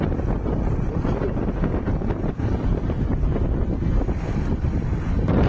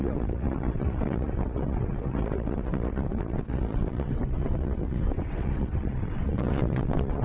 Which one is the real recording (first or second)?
first